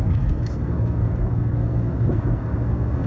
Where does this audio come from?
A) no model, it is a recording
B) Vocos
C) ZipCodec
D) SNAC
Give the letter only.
D